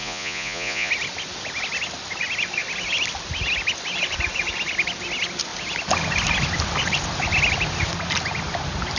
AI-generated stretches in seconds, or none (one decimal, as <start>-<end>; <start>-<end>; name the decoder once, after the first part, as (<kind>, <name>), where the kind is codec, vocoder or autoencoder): 0.0-0.9 (vocoder, Vocos)